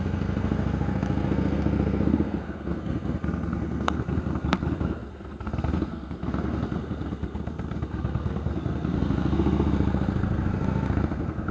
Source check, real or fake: fake